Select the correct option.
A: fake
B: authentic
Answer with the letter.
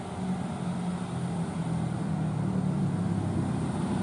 B